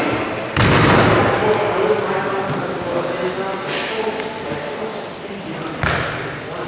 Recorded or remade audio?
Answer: recorded